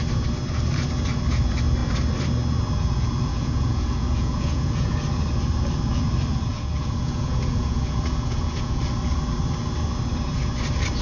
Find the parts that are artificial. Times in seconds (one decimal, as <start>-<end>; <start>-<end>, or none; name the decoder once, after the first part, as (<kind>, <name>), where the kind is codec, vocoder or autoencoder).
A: 3.3-5.0 (vocoder, Vocos); 6.5-8.8